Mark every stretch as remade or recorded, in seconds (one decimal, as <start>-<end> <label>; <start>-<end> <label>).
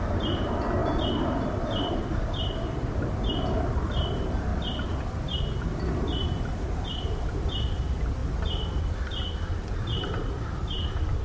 0.0-11.2 remade